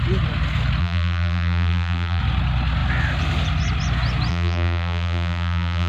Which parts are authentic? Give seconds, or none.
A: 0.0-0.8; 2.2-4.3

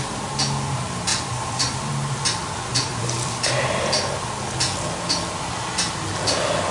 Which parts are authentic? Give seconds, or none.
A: 0.0-1.1; 1.9-2.7; 4.3-6.7

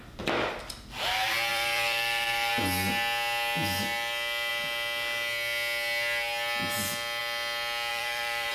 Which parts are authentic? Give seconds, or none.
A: 0.0-1.5; 2.5-7.9